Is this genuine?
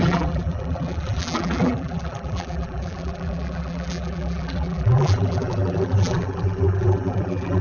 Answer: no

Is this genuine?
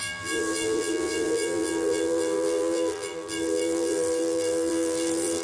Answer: no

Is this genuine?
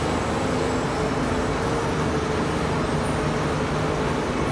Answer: yes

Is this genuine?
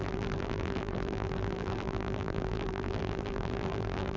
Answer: no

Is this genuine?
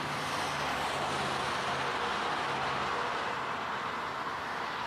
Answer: yes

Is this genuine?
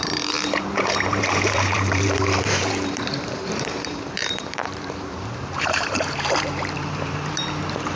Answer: no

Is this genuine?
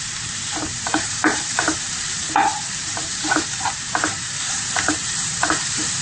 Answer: no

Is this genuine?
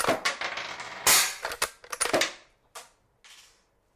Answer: yes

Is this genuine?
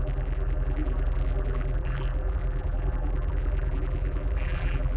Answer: no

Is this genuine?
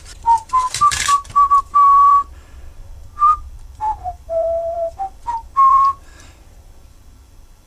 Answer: no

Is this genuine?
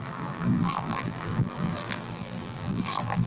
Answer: no